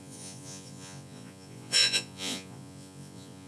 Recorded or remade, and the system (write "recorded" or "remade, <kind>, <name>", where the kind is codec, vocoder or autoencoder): remade, vocoder, Vocos